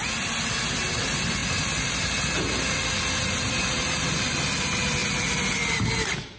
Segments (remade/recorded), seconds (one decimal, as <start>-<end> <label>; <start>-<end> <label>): 0.0-6.4 recorded

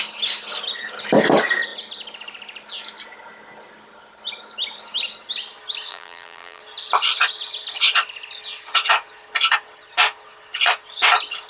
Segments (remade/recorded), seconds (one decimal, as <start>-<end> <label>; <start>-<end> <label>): 0.0-5.9 recorded; 5.9-6.6 remade; 6.6-11.5 recorded

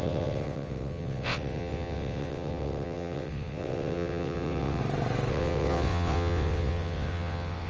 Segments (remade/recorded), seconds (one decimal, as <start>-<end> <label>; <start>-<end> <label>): 0.0-4.8 remade; 4.8-5.3 recorded; 5.3-7.7 remade

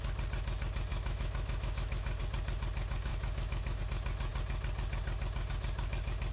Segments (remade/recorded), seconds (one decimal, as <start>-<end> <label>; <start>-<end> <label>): 0.0-0.9 recorded; 0.9-2.2 remade; 2.2-3.1 recorded; 3.1-3.8 remade; 3.8-6.3 recorded

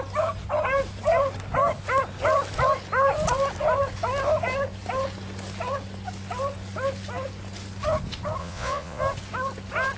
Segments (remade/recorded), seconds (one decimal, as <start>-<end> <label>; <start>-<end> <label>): 0.0-8.4 recorded; 8.4-9.0 remade; 9.0-10.0 recorded

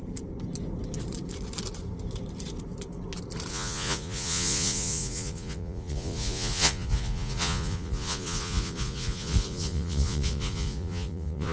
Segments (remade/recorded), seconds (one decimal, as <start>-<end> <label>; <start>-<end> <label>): 0.0-3.5 recorded; 3.5-11.5 remade